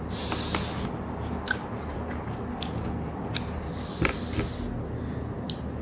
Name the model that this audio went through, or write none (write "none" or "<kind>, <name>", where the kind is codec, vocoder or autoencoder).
none